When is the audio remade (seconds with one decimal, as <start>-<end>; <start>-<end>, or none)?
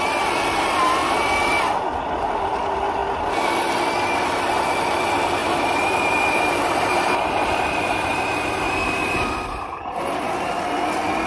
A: 5.4-10.5